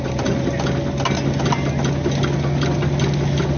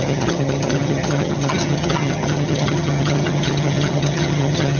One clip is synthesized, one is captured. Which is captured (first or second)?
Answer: first